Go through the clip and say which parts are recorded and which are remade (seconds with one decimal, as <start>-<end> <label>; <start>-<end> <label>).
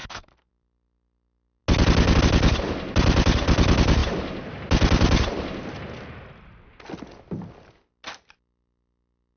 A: 0.0-0.5 remade; 0.5-9.4 recorded